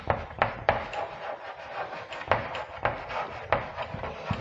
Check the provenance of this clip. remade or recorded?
recorded